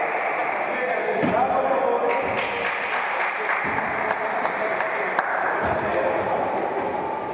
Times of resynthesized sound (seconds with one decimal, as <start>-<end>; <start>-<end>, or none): 0.0-0.4; 4.8-5.9